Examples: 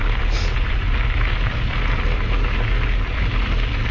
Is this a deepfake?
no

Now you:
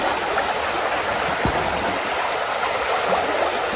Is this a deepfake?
no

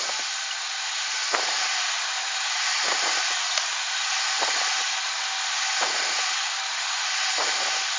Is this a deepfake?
no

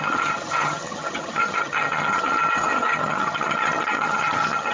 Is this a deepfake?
yes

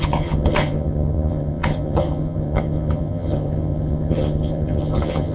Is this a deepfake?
yes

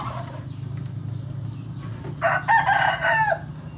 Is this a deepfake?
no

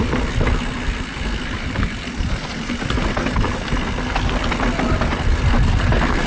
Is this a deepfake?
no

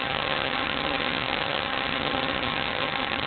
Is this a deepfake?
yes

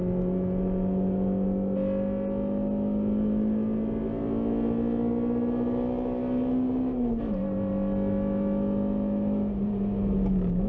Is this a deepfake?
no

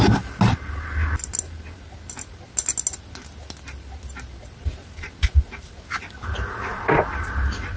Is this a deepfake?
no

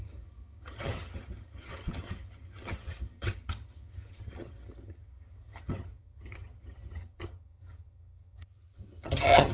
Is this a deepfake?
yes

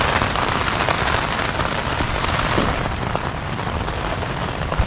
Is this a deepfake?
no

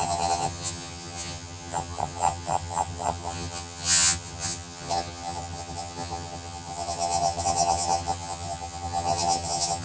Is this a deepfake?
yes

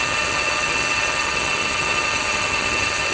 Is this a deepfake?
yes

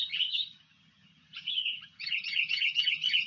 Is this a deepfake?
yes